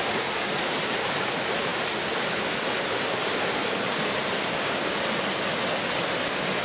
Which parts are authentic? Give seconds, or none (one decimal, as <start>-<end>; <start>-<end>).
0.0-6.6